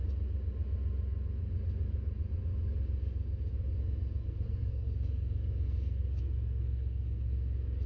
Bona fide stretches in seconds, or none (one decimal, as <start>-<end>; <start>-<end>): 0.0-4.3